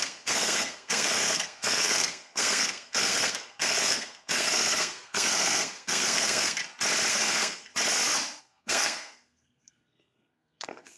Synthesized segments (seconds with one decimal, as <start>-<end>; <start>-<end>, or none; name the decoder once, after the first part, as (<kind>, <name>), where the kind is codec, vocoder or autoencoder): 0.0-6.6 (codec, SNAC); 7.1-7.7; 8.4-11.0